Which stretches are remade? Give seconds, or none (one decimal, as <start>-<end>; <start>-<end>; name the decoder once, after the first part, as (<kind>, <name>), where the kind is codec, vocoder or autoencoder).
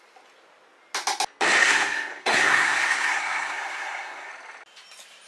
1.6-4.3 (codec, SNAC)